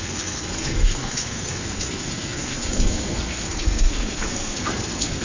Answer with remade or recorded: remade